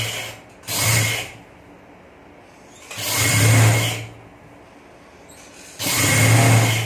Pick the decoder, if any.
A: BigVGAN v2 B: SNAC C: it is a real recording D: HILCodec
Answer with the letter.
C